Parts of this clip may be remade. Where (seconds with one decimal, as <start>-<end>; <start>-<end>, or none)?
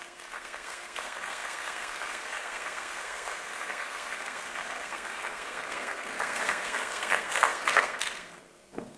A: 0.0-9.0